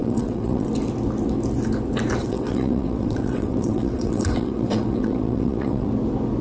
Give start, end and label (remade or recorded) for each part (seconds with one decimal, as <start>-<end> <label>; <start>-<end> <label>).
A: 0.0-0.7 remade; 0.7-2.2 recorded; 2.2-5.9 remade; 5.9-6.4 recorded